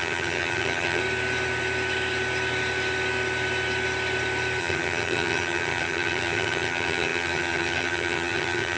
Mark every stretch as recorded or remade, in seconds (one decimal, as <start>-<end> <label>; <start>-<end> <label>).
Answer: 0.0-1.0 remade; 1.0-4.6 recorded; 4.6-8.8 remade